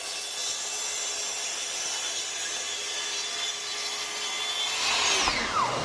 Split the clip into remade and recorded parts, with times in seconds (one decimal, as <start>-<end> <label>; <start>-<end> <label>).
0.0-5.8 recorded